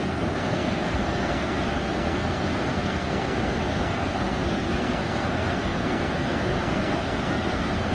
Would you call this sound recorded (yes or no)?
no